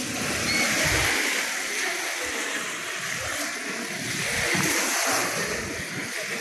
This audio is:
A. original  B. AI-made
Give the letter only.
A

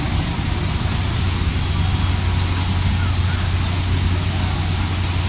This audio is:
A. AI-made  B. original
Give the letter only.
B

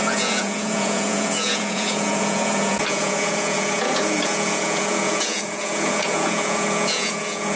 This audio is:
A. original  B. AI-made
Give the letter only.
B